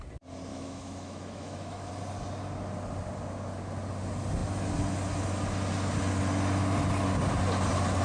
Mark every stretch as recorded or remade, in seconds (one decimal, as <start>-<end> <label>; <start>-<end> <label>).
0.0-0.5 recorded; 0.5-1.9 remade; 1.9-8.0 recorded